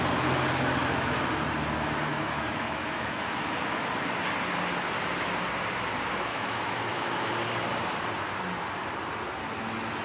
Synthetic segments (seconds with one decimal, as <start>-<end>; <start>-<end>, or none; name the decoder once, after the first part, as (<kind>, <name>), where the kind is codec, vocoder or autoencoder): 0.8-1.3 (autoencoder, DAC-VAE); 2.1-3.5; 6.3-7.3